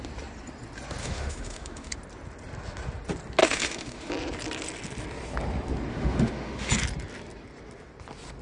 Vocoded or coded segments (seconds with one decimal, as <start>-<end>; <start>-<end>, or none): 1.0-1.9; 3.4-4.1; 5.9-6.7